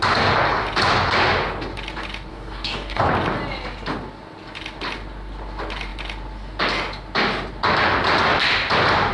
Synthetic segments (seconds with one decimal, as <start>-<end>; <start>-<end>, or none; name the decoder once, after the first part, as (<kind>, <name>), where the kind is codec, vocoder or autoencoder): 2.3-3.0 (codec, DAC)